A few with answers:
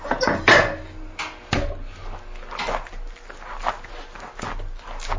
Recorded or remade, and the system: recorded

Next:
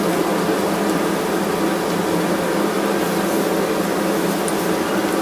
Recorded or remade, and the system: recorded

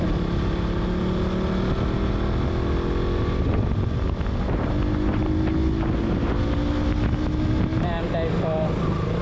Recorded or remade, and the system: recorded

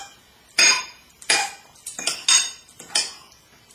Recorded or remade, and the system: recorded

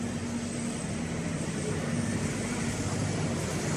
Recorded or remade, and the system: recorded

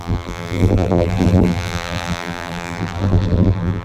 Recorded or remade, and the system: remade, vocoder, BigVGAN v2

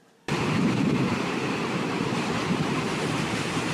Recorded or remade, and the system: remade, vocoder, BigVGAN v2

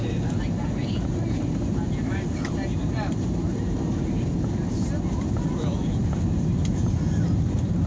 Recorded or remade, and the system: remade, vocoder, BigVGAN v2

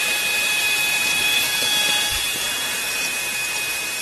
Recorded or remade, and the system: remade, vocoder, BigVGAN v2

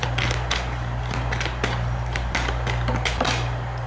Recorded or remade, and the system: recorded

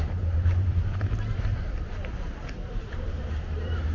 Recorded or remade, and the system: remade, vocoder, BigVGAN v2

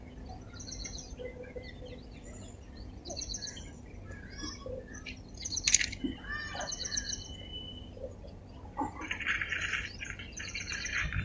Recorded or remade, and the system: remade, vocoder, BigVGAN v2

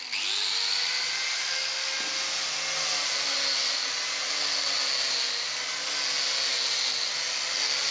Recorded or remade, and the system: recorded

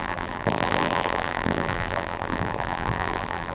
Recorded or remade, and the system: remade, vocoder, BigVGAN v2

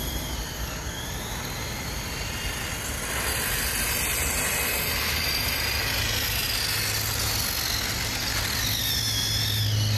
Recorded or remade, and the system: recorded